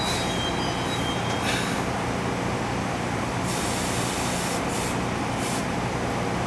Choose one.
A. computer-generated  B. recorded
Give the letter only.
B